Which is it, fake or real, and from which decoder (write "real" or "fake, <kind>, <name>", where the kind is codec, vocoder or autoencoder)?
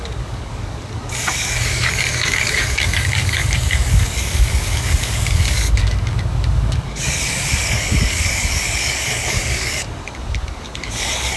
fake, codec, DAC